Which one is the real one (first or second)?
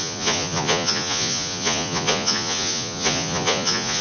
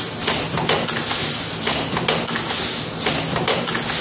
second